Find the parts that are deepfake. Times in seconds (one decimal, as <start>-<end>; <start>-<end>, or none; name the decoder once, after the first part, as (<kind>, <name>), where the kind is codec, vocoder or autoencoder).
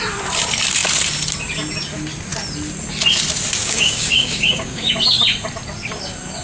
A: 3.6-4.9 (codec, DAC)